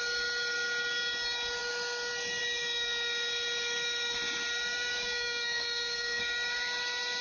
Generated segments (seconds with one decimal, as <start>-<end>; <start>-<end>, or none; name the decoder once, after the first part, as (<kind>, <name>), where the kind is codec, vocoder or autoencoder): 4.9-6.2 (codec, DAC)